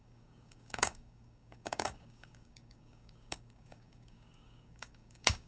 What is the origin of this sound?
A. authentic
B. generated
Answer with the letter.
B